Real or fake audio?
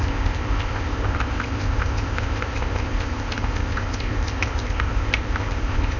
fake